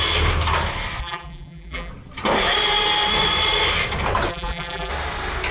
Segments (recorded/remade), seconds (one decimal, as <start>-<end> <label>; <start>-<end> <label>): 0.0-1.0 recorded; 1.0-1.9 remade; 1.9-4.3 recorded; 4.3-4.9 remade; 4.9-5.5 recorded